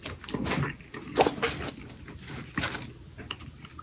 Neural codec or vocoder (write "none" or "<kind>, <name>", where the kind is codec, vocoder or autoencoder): none